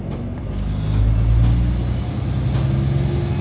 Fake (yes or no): no